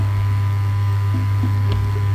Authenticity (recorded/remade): remade